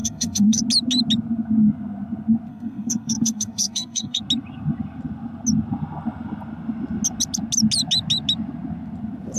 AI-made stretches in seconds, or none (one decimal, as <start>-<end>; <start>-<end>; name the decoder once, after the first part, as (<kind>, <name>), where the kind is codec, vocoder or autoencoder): 0.0-0.6 (codec, SNAC); 2.5-4.2

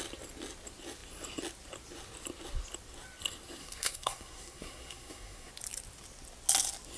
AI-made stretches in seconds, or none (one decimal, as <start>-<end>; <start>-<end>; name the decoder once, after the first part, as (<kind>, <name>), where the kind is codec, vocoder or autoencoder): 3.6-5.5 (codec, SNAC)

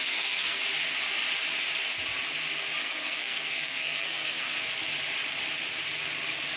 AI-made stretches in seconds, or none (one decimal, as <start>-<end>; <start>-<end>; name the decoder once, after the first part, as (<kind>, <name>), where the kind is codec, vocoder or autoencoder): 0.0-0.6 (codec, SNAC); 2.8-4.6